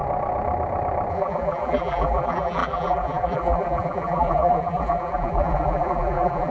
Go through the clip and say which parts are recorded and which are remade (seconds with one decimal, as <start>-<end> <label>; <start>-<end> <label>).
0.0-1.1 recorded; 1.1-6.5 remade